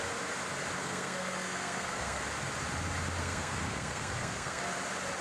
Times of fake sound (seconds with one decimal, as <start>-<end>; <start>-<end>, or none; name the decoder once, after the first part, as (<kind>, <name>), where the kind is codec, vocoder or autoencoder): 0.8-2.2 (codec, SNAC); 3.2-4.6